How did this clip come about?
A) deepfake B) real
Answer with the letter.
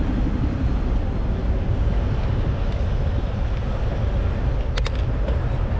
B